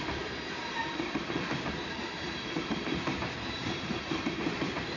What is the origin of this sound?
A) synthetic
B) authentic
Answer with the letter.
A